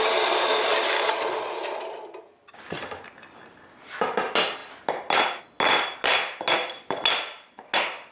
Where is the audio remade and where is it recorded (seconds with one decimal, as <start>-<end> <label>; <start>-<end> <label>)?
0.0-8.1 recorded